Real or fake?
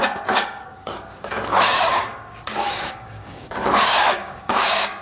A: fake